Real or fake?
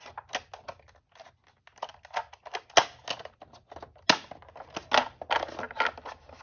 real